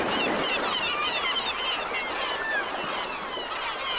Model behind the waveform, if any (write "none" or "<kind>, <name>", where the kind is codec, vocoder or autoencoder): none